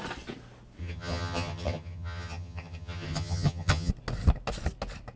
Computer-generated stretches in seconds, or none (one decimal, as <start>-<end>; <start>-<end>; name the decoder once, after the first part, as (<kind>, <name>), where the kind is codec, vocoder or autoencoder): 0.8-3.9 (vocoder, HiFi-GAN)